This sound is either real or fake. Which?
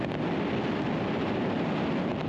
real